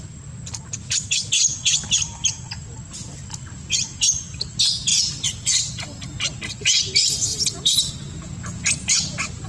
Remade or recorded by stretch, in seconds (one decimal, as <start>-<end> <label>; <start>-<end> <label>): 0.0-9.5 recorded